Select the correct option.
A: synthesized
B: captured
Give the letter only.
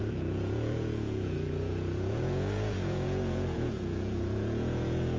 A